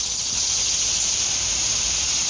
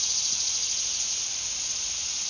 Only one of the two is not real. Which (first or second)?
second